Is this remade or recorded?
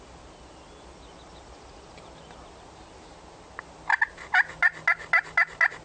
recorded